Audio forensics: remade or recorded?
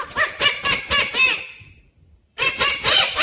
remade